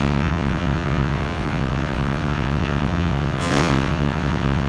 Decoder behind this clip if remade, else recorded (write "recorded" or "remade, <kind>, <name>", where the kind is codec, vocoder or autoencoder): remade, vocoder, WaveNeXt